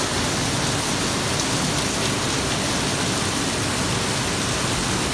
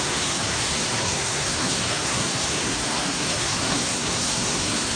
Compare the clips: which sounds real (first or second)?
first